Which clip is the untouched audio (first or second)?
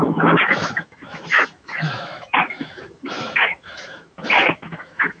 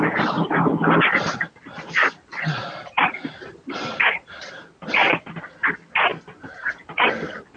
second